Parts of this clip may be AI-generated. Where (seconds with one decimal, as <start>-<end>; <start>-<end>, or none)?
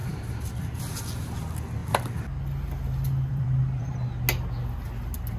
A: 3.3-3.9